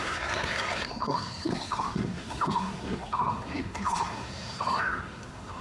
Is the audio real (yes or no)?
no